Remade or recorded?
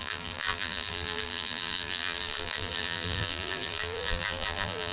remade